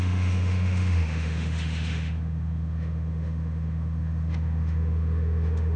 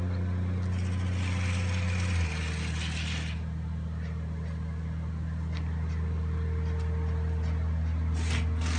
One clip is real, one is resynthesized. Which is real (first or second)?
second